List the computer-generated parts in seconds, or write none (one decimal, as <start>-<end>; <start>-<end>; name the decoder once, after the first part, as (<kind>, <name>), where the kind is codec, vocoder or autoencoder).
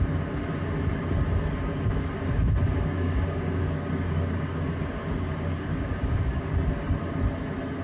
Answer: 1.7-6.4 (codec, DAC)